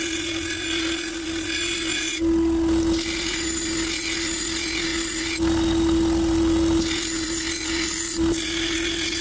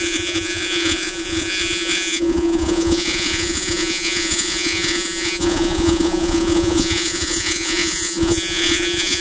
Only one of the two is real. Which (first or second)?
first